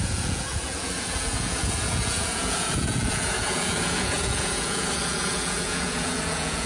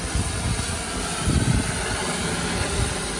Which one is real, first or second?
second